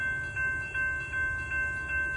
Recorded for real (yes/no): yes